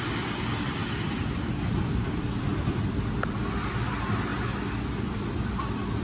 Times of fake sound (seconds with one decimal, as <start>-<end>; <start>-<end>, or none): none